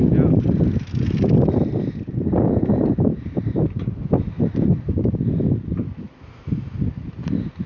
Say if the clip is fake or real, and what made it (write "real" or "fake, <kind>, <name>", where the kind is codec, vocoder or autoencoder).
real